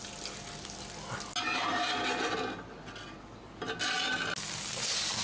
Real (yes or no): yes